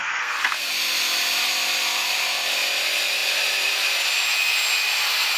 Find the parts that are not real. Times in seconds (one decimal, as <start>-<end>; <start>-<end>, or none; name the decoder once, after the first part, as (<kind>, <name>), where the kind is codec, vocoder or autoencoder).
0.0-0.7 (codec, SNAC)